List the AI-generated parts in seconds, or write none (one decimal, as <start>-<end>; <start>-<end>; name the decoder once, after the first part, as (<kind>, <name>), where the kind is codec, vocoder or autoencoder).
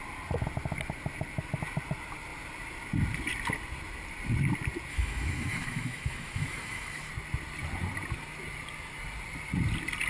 4.9-7.1 (autoencoder, DAC-VAE)